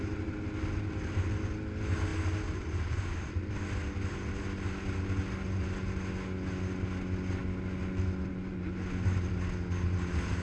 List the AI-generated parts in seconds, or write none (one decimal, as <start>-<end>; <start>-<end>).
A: none